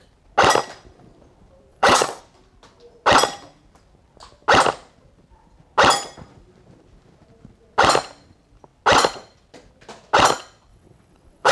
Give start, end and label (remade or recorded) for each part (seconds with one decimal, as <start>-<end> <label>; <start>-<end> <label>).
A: 0.0-1.7 recorded; 1.7-2.2 remade; 2.2-10.7 recorded; 10.7-11.5 remade